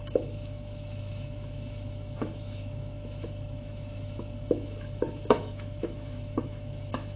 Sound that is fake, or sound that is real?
fake